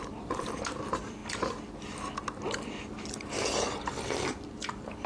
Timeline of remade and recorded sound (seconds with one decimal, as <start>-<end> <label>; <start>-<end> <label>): 0.0-1.2 remade; 1.2-4.3 recorded; 4.3-5.1 remade